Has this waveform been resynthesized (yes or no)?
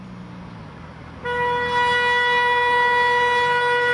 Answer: no